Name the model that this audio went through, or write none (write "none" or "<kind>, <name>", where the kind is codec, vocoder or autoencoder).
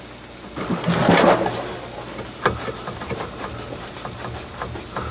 none